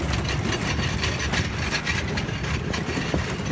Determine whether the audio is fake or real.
real